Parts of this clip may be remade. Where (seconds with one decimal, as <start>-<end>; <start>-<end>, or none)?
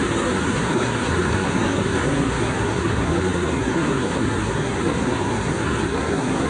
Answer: 0.0-6.5